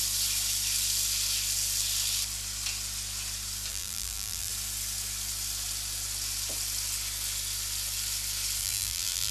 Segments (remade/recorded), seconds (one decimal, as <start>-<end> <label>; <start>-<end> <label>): 0.0-3.7 recorded; 3.7-4.5 remade; 4.5-8.6 recorded; 8.6-9.3 remade